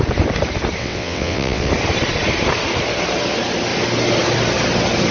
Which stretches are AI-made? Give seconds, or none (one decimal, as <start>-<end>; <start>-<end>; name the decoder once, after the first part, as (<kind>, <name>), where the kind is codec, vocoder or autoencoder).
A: 0.8-1.7 (vocoder, WaveNeXt)

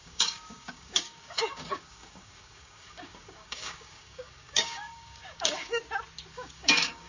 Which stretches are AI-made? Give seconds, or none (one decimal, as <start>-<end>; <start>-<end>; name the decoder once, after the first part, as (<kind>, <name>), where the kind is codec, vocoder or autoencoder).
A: 0.0-5.8 (codec, DAC); 6.3-7.1

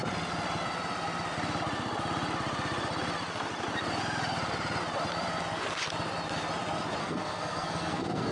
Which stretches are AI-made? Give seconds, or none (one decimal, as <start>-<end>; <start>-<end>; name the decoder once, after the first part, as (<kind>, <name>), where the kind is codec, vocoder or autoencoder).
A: 7.0-8.3 (codec, SNAC)

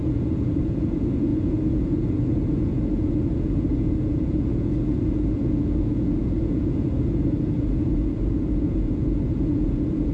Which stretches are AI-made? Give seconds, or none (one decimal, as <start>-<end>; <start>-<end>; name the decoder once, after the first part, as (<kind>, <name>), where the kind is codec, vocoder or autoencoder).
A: 0.0-10.1 (vocoder, Vocos)

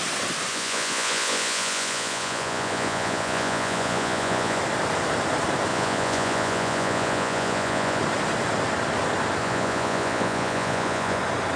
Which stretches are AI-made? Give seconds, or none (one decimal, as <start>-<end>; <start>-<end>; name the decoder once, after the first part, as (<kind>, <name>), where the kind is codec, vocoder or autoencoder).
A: 0.5-4.6 (vocoder, Vocos); 5.7-8.0; 9.4-11.2

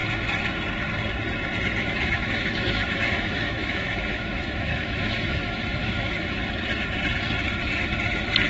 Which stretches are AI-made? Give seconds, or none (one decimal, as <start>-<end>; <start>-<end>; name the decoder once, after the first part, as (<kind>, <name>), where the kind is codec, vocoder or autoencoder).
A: 1.8-6.4 (autoencoder, DAC-VAE)

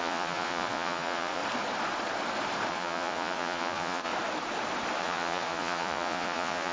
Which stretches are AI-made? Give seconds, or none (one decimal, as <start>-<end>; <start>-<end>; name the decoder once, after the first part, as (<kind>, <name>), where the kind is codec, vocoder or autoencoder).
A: 0.0-1.4 (vocoder, Vocos); 2.7-4.1; 5.0-6.7

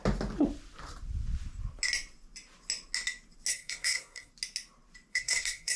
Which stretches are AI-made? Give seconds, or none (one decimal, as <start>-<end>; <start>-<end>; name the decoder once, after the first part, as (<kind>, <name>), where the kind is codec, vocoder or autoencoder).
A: 3.5-4.3 (codec, SNAC); 5.1-5.8